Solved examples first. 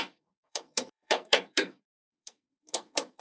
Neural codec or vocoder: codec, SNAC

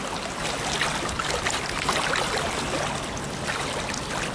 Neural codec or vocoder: none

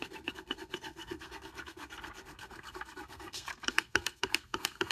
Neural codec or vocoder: codec, SNAC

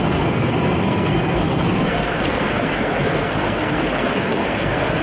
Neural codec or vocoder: codec, SNAC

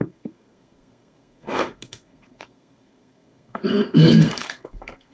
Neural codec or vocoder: codec, SNAC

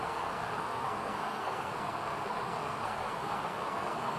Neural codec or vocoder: codec, SNAC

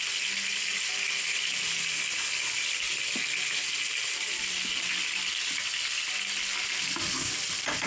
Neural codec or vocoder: none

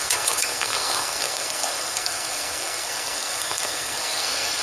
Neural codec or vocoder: codec, SNAC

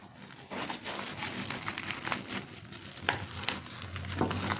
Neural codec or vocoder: none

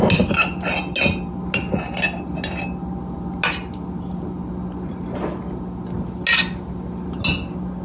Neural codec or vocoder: none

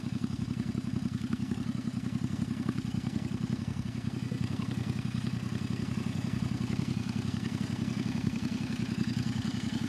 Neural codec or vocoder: codec, SNAC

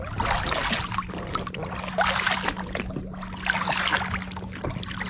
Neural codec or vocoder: none